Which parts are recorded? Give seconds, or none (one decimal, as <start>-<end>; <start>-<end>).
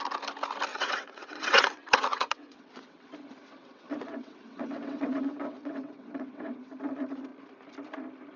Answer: 0.0-0.7; 3.1-3.6; 6.7-8.4